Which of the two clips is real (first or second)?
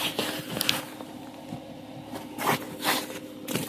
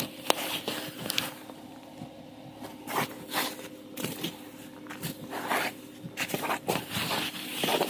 first